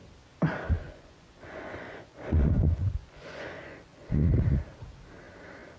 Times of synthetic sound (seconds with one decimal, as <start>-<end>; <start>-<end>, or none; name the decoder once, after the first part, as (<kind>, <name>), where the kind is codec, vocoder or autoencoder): 0.8-4.3 (vocoder, Vocos)